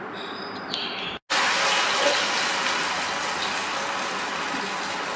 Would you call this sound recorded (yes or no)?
yes